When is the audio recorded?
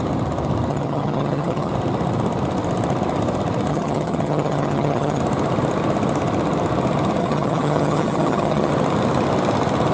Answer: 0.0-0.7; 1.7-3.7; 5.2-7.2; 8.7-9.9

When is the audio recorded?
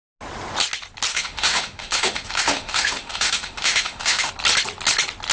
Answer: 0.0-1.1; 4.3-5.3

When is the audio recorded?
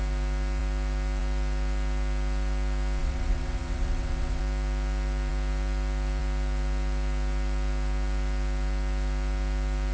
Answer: 0.0-3.0; 4.4-9.9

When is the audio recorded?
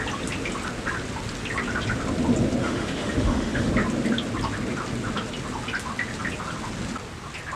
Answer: 0.0-2.6; 3.7-7.6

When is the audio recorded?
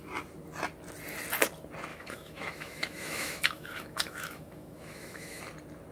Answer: 0.0-1.9; 5.4-5.9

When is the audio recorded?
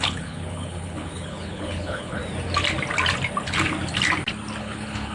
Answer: 2.2-4.6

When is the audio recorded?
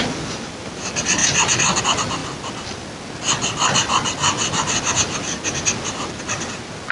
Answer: 0.0-6.9